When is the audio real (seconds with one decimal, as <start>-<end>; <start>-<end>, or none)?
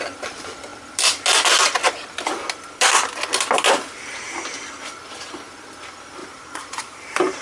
0.0-6.2